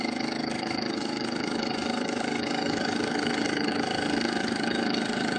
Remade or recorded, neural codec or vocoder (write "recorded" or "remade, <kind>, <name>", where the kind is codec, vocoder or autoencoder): remade, codec, DAC